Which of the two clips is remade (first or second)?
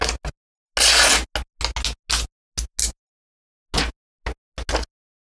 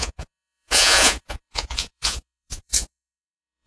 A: second